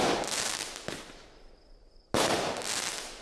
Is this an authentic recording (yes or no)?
yes